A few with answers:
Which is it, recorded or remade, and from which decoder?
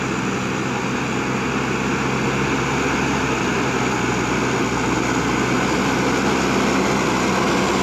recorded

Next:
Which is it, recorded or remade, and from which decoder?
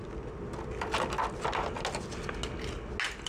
recorded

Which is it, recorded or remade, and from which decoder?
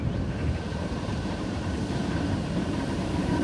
remade, vocoder, BigVGAN v2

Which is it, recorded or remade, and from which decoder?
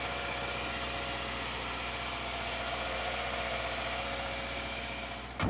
recorded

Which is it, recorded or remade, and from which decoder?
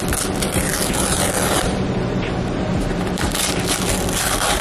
remade, vocoder, BigVGAN v2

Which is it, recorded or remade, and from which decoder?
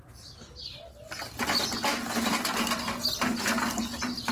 recorded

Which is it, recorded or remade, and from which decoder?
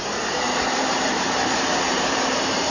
remade, vocoder, BigVGAN v2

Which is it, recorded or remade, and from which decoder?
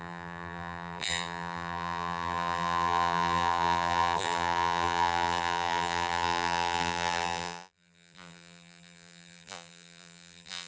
remade, vocoder, BigVGAN v2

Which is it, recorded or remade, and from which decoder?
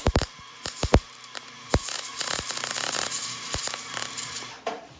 remade, vocoder, BigVGAN v2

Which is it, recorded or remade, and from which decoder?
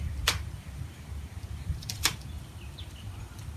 remade, vocoder, BigVGAN v2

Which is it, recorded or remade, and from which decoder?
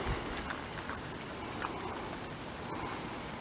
recorded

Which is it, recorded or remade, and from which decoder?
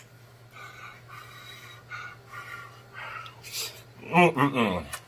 recorded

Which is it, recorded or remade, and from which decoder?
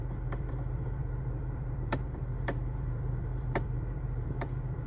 remade, vocoder, BigVGAN v2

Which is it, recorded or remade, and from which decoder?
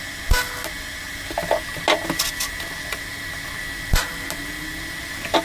recorded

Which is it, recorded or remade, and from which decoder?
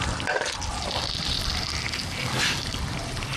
recorded